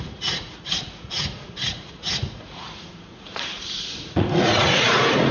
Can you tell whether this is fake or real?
fake